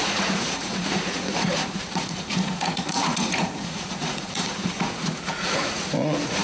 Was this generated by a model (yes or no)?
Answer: yes